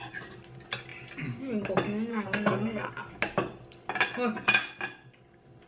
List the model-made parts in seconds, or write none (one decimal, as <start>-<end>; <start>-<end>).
2.1-2.9